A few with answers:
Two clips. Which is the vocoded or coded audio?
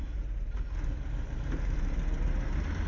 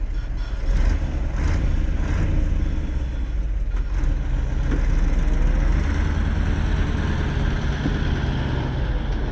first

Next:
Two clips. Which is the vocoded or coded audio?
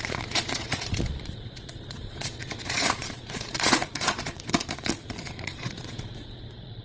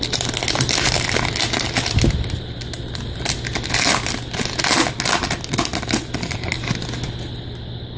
first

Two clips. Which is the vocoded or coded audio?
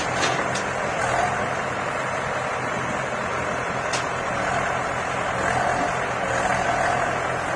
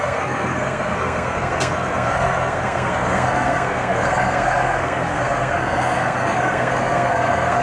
second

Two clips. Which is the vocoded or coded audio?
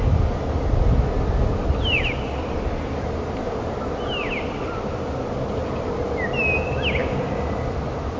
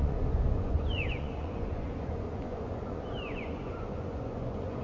second